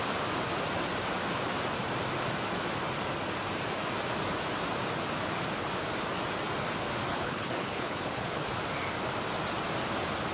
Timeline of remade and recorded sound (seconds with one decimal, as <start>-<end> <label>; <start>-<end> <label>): 0.0-7.1 recorded; 7.1-8.5 remade; 8.5-10.3 recorded